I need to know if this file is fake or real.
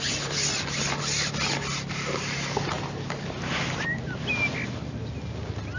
real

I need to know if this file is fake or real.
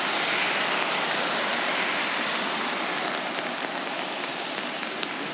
real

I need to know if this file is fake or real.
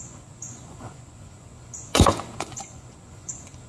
fake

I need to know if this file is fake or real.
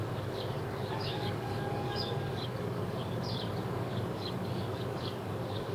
fake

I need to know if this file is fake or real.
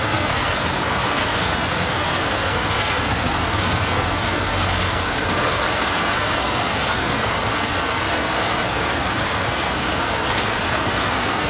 fake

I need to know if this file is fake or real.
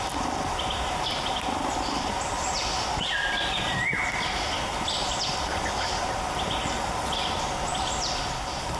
fake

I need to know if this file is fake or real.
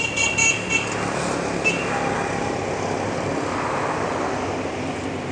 real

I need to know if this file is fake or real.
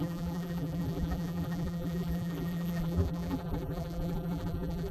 fake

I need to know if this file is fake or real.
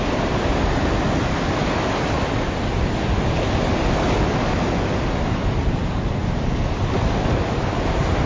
real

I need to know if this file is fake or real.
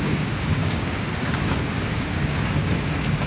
fake